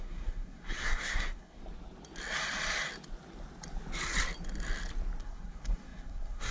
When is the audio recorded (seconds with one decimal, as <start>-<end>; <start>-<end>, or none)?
1.6-5.2